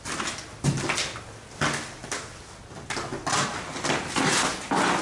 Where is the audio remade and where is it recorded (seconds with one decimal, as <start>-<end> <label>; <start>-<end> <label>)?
0.0-5.0 recorded